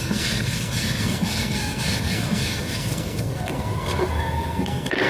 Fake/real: fake